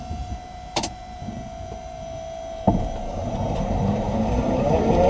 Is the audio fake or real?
fake